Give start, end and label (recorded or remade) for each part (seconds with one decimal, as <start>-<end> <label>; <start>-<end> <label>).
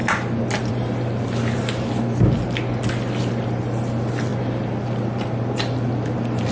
0.0-3.2 recorded; 3.2-3.8 remade; 3.8-4.3 recorded; 4.3-6.5 remade